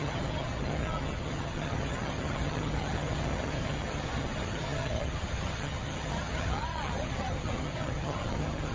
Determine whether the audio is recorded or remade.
remade